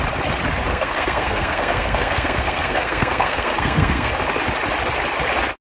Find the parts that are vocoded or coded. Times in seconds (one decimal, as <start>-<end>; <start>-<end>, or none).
0.7-4.1